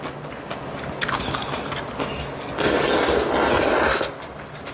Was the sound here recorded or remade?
recorded